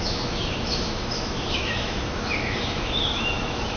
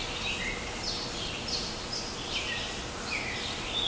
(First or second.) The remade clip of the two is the first